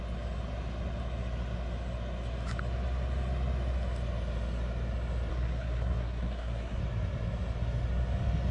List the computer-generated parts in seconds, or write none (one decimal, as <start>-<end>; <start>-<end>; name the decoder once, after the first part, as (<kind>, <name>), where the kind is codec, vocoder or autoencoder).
5.3-6.8 (codec, SNAC)